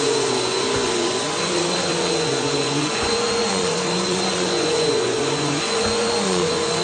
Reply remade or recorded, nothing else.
remade